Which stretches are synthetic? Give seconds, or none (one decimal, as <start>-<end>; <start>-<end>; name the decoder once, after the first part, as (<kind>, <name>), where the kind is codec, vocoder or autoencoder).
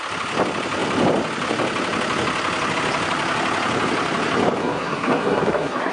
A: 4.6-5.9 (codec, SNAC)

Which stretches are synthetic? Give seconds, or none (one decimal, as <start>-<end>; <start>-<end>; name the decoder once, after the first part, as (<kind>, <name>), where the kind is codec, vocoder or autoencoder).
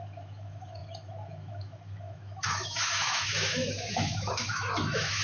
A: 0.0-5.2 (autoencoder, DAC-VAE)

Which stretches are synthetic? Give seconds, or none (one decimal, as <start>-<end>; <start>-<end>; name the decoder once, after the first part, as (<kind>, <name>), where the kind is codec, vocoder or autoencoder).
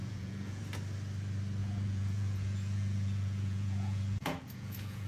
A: 0.0-0.6 (vocoder, Vocos); 1.6-5.1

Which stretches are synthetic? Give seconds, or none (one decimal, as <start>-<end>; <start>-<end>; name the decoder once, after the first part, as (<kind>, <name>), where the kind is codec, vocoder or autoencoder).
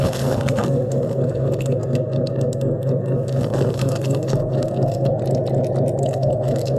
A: 0.0-5.2 (codec, SNAC); 6.0-6.8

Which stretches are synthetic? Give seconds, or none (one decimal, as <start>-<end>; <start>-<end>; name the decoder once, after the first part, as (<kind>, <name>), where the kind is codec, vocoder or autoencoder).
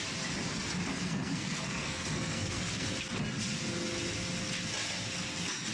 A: 0.9-3.0 (codec, SNAC)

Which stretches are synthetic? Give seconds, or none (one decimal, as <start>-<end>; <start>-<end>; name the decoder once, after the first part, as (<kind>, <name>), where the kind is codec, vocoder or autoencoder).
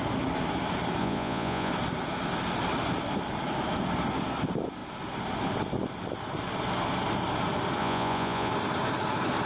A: 1.0-1.7 (vocoder, Vocos); 7.8-8.5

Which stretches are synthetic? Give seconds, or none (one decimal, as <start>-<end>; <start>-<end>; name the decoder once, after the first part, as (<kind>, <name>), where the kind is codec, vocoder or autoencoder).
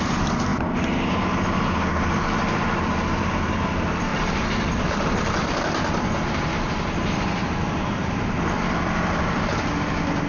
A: 4.1-5.6 (vocoder, BigVGAN v2); 6.5-8.4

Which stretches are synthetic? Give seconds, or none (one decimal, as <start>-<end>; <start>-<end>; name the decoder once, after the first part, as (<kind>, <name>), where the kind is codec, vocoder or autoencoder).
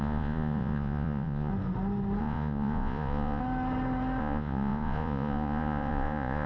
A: 0.0-1.5 (vocoder, Vocos); 2.2-3.4; 4.2-6.5